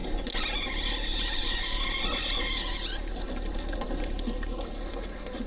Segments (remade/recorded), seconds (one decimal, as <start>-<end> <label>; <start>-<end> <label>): 0.0-5.5 recorded